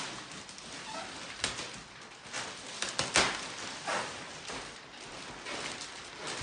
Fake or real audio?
real